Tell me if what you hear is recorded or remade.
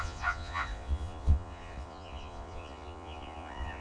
remade